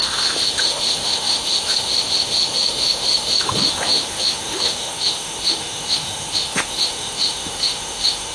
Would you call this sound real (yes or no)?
no